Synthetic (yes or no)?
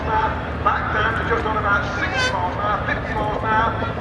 no